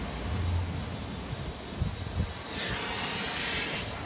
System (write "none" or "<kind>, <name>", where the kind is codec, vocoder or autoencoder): none